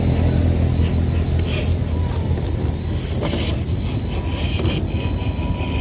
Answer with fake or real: real